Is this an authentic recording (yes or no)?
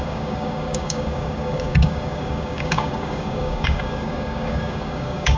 no